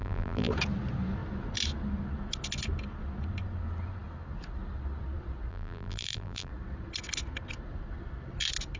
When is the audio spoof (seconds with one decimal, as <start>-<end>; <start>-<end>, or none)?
0.0-0.5; 5.5-6.5